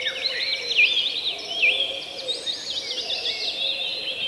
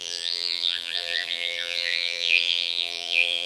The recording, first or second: first